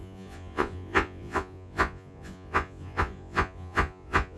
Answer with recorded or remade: remade